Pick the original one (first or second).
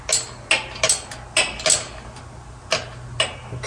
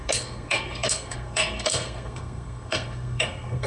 first